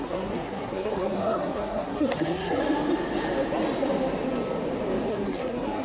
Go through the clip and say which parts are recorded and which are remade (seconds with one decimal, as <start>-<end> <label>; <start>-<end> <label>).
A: 0.0-2.6 remade; 2.6-5.1 recorded; 5.1-5.8 remade